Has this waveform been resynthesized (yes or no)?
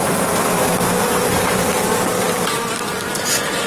no